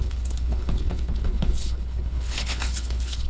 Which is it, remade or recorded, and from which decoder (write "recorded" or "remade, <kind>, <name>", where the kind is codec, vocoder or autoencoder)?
remade, codec, HILCodec